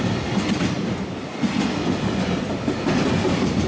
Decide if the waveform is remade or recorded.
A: recorded